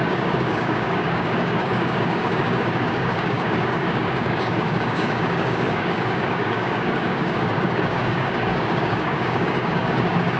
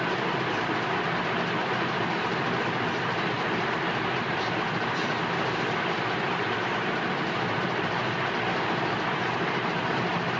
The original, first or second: second